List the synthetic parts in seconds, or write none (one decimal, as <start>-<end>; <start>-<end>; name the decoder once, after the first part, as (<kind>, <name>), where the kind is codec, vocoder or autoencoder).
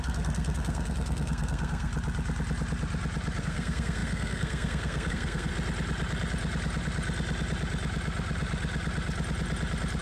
0.0-1.9 (codec, SNAC); 3.4-5.5